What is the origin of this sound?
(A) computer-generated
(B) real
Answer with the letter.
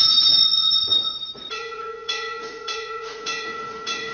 A